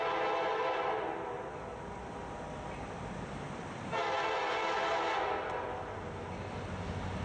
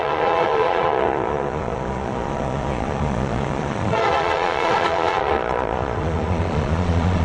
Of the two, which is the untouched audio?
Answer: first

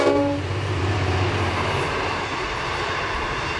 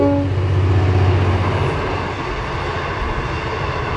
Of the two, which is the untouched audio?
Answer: second